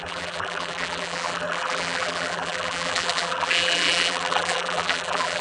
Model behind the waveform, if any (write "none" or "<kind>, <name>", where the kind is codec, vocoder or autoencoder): vocoder, BigVGAN v2